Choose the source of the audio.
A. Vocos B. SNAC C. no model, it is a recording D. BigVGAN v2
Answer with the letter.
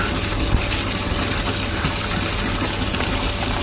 C